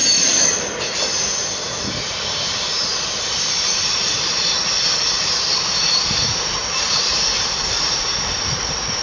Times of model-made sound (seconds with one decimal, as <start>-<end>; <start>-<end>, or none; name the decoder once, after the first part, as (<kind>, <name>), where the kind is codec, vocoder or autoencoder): 3.2-9.0 (vocoder, BigVGAN v2)